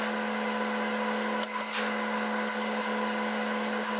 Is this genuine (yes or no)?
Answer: yes